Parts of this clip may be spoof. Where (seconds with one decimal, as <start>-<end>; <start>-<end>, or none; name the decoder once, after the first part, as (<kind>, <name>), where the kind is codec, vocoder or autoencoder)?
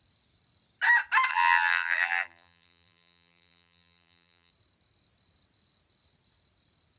1.3-4.5 (vocoder, BigVGAN v2)